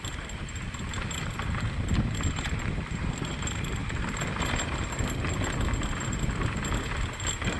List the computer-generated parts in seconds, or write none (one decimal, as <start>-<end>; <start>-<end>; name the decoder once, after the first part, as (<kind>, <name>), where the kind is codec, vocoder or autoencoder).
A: none

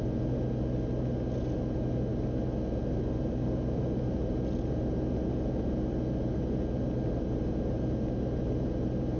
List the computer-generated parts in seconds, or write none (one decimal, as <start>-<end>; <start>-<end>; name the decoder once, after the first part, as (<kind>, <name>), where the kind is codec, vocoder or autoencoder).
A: none

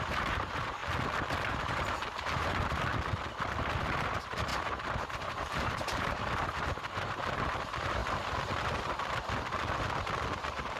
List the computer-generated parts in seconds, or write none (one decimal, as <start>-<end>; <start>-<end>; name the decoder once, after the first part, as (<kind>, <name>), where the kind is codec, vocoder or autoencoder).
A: 0.0-0.8 (vocoder, BigVGAN v2); 1.5-2.9; 3.5-8.0; 10.4-10.8

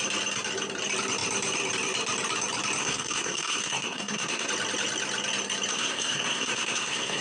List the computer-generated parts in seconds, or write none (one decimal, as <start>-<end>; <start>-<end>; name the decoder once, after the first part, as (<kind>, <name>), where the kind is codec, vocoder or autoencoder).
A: 2.8-4.5 (codec, SNAC); 5.7-7.2

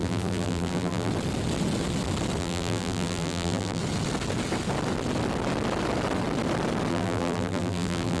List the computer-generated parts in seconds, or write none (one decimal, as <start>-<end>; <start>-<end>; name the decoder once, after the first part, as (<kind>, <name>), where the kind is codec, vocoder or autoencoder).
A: 0.0-1.1 (vocoder, BigVGAN v2); 2.4-3.8; 6.9-8.2

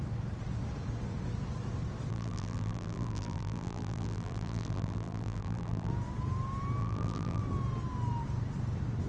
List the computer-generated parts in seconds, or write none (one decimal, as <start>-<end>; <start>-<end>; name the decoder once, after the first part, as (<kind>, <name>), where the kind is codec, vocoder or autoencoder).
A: 2.1-5.9 (vocoder, BigVGAN v2); 6.8-7.4